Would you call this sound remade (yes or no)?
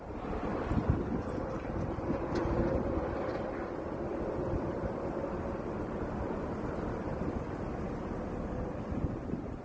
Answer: no